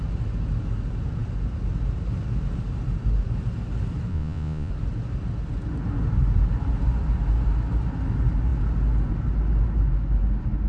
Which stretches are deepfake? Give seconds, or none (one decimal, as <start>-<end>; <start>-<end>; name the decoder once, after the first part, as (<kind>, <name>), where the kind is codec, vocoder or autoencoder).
4.1-4.7 (vocoder, Vocos)